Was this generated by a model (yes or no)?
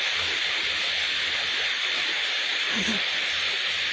no